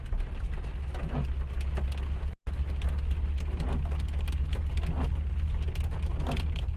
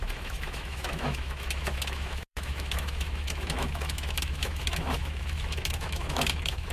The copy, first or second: second